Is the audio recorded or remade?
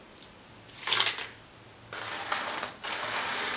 recorded